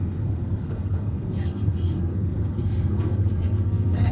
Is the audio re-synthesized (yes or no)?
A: yes